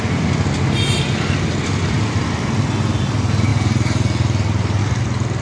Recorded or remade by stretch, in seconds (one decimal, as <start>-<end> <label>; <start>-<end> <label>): 0.0-5.4 recorded